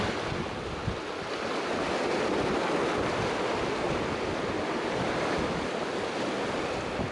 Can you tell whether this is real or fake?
real